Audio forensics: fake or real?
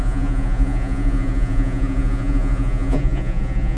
fake